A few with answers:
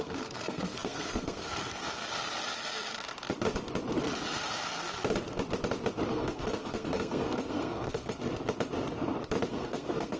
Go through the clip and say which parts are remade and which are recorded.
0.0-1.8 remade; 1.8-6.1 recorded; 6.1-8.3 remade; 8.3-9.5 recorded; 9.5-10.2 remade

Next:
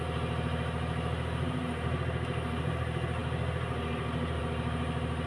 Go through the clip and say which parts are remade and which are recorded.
0.0-5.3 recorded

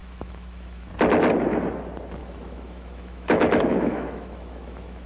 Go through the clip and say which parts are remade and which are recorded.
0.0-0.9 remade; 0.9-2.2 recorded; 2.2-5.1 remade